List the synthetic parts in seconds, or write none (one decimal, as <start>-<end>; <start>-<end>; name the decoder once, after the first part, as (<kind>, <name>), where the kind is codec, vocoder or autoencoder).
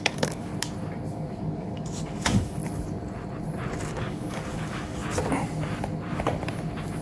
0.0-0.5 (codec, DAC); 1.1-2.6; 4.0-5.0